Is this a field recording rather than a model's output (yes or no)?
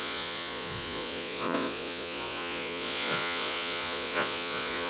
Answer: no